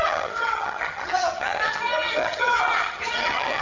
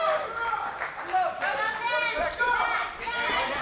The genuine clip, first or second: second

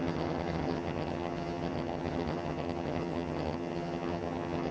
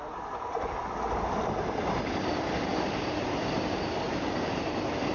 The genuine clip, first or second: second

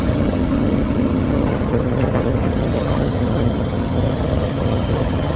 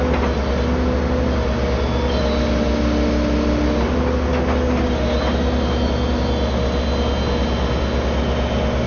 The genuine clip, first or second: second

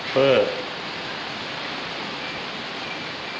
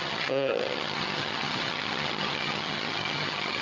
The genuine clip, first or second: first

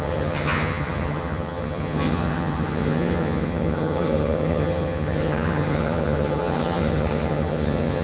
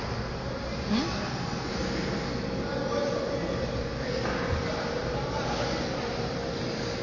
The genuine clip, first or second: second